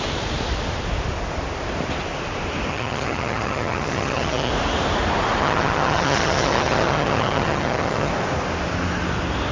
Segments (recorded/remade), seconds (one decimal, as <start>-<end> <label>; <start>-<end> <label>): 0.0-2.7 recorded; 2.7-4.5 remade; 4.5-5.4 recorded; 5.4-8.1 remade; 8.1-9.5 recorded